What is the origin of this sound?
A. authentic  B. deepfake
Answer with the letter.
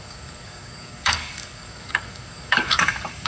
B